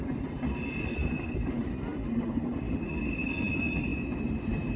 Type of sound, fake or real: real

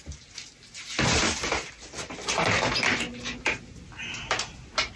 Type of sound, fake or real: real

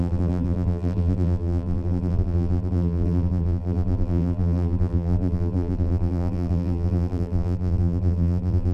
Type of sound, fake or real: fake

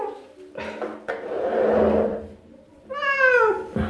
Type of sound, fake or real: real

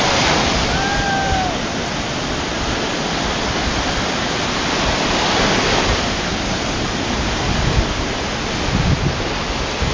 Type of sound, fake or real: real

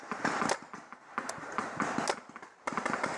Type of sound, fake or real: real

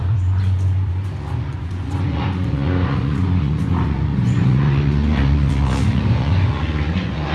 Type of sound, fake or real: fake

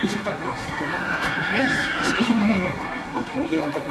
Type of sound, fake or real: fake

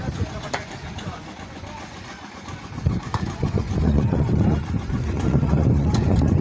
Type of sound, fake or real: fake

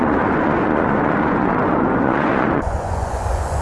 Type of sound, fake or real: fake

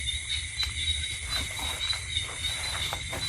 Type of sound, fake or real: fake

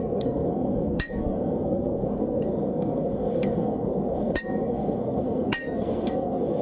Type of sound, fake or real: fake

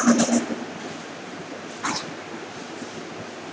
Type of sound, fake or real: real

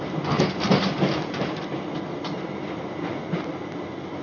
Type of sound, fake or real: real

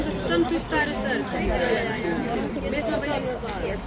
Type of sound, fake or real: real